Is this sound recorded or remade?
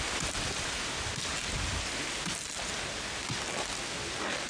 recorded